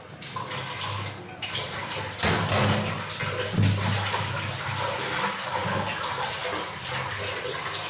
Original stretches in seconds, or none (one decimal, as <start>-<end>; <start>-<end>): 0.0-7.9

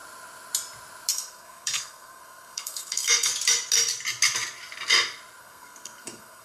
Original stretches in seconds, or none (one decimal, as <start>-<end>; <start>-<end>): 0.0-1.1; 3.3-5.4

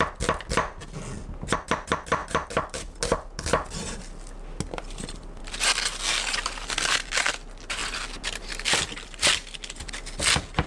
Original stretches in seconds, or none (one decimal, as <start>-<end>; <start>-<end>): 0.0-10.7

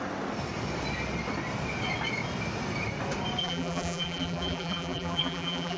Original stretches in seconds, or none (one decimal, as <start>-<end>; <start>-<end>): 0.0-3.4

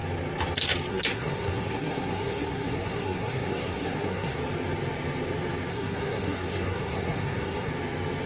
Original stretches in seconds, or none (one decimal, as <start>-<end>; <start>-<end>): 0.0-0.9; 4.4-5.7; 7.7-8.3